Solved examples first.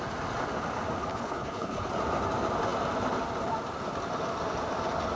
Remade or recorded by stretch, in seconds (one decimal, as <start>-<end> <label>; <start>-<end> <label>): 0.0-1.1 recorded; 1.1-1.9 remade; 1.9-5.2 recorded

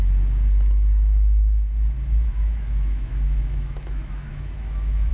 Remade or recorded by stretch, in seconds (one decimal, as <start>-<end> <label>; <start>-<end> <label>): 0.0-2.3 recorded; 2.3-5.1 remade

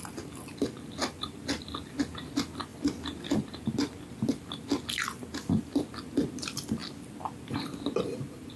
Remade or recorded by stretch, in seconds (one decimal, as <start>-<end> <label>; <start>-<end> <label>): 0.0-8.6 recorded

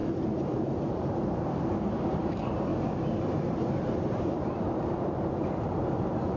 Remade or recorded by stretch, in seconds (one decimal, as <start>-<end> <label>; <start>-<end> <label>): 0.0-0.9 recorded; 0.9-2.7 remade; 2.7-3.2 recorded; 3.2-6.4 remade

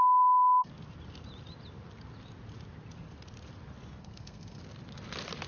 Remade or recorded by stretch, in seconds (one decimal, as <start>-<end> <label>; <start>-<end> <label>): 0.0-0.7 remade; 0.7-4.0 recorded; 4.0-4.6 remade; 4.6-5.5 recorded

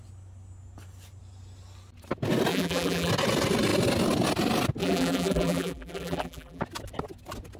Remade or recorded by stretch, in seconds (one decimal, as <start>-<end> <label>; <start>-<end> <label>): 0.0-2.5 recorded; 2.5-3.1 remade; 3.1-4.8 recorded; 4.8-6.6 remade; 6.6-7.6 recorded

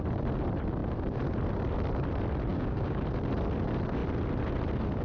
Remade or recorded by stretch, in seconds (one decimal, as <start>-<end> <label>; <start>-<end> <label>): 0.0-2.5 recorded; 2.5-3.0 remade; 3.0-5.0 recorded